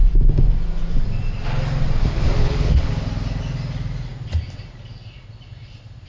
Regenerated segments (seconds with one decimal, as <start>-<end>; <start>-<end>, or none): 2.0-2.9